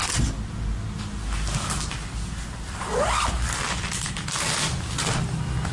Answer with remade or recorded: recorded